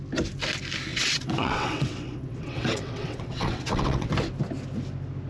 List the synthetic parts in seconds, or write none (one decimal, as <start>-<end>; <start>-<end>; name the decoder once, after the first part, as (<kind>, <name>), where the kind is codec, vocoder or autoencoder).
0.9-4.1 (vocoder, WaveNeXt)